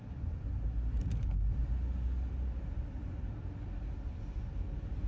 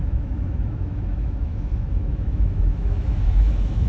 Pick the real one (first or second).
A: first